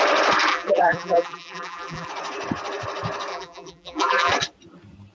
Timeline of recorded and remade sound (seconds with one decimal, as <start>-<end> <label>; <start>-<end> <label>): 0.0-0.5 recorded; 0.5-2.1 remade; 2.1-3.3 recorded; 3.3-4.3 remade; 4.3-5.1 recorded